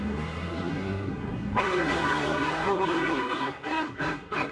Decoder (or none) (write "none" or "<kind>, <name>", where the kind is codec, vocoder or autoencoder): codec, SNAC